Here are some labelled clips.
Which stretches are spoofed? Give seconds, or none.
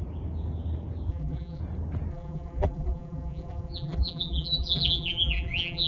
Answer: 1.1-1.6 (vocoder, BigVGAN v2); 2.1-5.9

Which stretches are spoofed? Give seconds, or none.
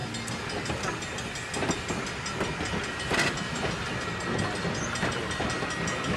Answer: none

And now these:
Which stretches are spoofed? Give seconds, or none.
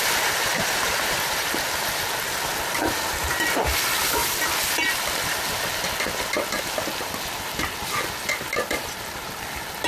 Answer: 0.5-1.5 (vocoder, BigVGAN v2)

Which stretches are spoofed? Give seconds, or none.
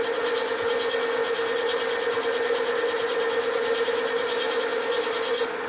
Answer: none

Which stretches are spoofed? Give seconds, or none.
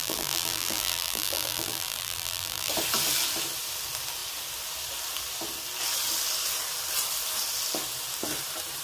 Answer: 0.0-2.7 (vocoder, BigVGAN v2)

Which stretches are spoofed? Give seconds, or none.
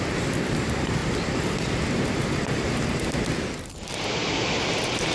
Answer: none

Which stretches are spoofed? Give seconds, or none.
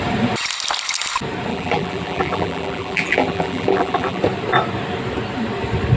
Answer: 1.5-4.2 (vocoder, BigVGAN v2)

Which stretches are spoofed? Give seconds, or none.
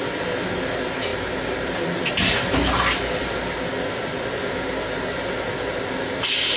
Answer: 1.1-2.1 (vocoder, BigVGAN v2)